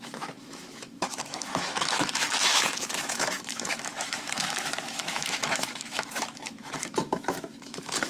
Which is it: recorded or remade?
remade